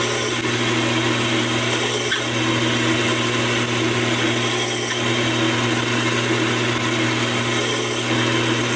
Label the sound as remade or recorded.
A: recorded